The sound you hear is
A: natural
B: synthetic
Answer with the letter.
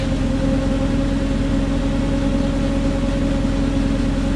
A